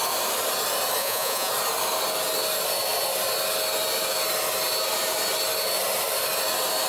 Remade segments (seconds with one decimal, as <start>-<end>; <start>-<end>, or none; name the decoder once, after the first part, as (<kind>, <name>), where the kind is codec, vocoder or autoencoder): 1.0-1.5 (vocoder, Vocos)